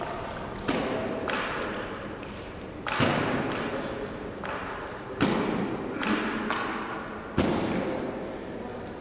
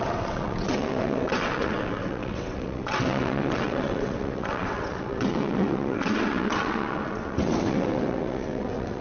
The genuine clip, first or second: first